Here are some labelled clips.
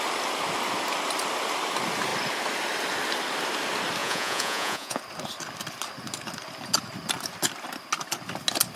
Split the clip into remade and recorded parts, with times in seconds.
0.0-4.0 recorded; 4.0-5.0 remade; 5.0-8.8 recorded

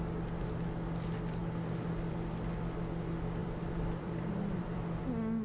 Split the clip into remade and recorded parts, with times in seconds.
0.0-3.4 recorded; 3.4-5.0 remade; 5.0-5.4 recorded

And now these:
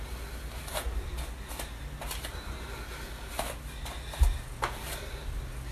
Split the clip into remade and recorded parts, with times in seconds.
0.0-5.7 recorded

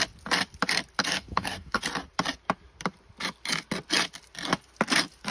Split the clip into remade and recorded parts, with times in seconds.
0.0-1.0 recorded; 1.0-1.8 remade; 1.8-5.3 recorded

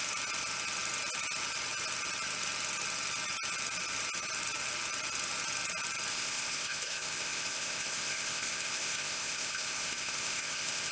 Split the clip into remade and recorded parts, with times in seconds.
0.0-6.1 recorded; 6.1-10.9 remade